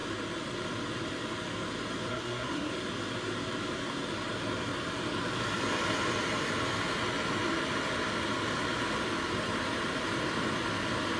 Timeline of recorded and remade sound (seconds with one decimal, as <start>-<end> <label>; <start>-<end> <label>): 0.0-2.1 recorded; 2.1-2.7 remade; 2.7-11.2 recorded